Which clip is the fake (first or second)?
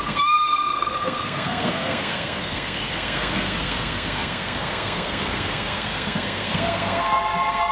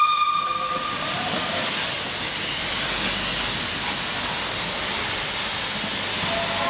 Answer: first